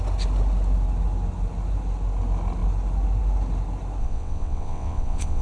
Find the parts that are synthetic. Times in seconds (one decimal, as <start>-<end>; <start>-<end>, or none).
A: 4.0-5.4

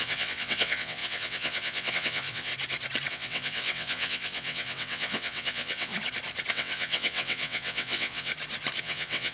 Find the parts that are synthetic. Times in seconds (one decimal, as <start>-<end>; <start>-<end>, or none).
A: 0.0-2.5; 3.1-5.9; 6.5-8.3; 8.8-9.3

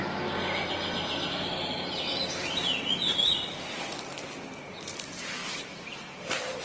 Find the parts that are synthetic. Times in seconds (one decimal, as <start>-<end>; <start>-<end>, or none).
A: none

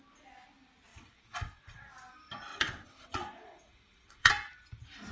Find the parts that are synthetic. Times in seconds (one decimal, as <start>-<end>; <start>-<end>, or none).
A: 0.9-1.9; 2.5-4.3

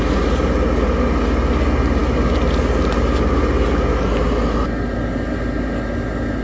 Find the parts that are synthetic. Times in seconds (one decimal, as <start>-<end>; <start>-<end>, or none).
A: none

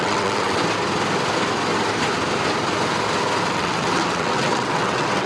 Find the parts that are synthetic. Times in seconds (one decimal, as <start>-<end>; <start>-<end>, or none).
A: 0.0-0.6; 3.5-5.3

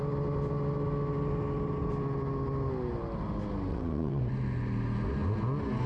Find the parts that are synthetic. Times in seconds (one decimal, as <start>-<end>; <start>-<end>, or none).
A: 3.7-4.2

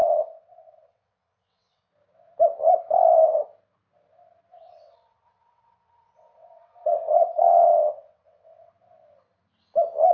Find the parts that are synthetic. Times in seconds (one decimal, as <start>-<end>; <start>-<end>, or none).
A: 0.0-1.9; 4.5-8.7